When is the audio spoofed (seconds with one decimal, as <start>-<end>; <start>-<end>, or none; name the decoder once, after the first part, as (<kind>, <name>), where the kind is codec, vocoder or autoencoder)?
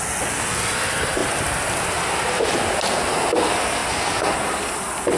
none